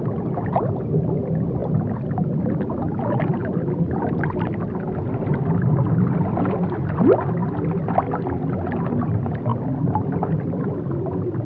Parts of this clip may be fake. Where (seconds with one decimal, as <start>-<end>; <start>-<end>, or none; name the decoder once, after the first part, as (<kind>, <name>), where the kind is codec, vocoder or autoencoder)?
1.6-2.7 (vocoder, BigVGAN v2); 3.4-4.0; 9.5-10.7